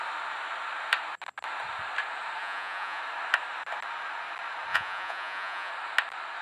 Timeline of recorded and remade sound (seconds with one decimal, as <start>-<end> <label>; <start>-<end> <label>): 0.0-2.4 recorded; 2.4-3.0 remade; 3.0-4.7 recorded; 4.7-5.7 remade; 5.7-6.4 recorded